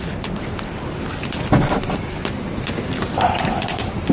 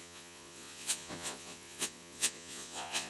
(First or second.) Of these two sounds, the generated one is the second